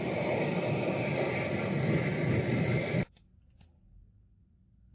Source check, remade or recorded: recorded